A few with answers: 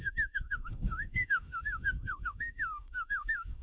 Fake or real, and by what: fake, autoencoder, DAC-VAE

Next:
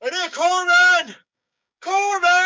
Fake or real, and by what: fake, codec, DAC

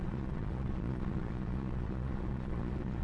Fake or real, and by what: fake, vocoder, Vocos